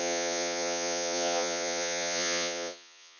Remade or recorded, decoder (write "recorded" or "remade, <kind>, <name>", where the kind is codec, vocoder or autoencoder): remade, vocoder, Vocos